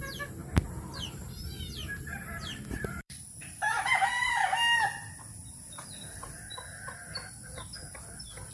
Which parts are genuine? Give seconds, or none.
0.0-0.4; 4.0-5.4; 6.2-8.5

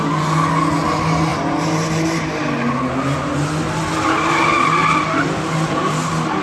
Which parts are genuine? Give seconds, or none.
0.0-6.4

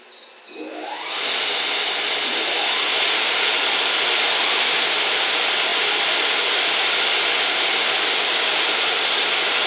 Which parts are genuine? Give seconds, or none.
0.0-9.7

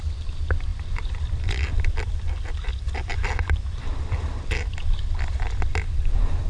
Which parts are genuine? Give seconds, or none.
0.0-0.7; 2.1-3.1; 5.7-6.5

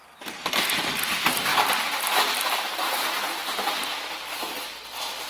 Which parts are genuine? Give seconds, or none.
0.0-1.5; 4.3-5.3